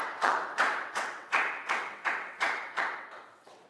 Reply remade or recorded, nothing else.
remade